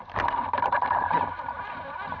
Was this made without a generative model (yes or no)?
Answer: yes